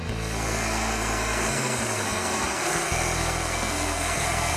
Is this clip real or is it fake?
fake